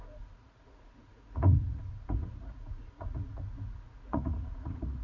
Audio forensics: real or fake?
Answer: fake